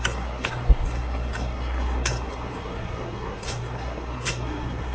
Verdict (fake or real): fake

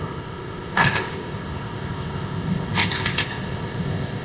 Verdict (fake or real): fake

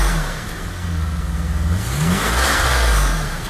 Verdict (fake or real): fake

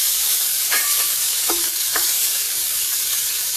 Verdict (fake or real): fake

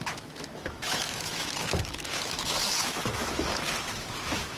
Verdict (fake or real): fake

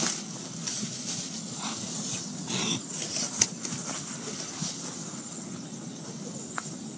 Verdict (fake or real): real